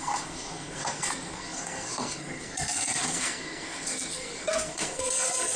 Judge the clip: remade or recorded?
remade